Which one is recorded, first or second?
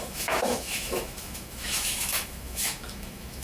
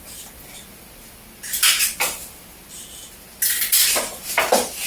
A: second